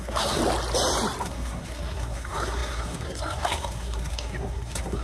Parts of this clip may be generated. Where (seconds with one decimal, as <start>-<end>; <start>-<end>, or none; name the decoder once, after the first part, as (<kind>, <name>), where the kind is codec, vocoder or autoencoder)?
0.0-0.4 (codec, SNAC); 1.2-5.0